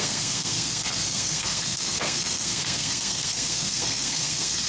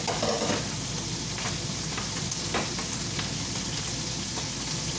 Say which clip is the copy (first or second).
first